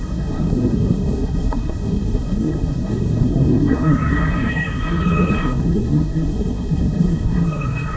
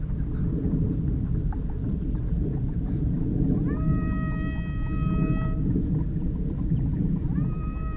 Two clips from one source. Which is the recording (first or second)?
second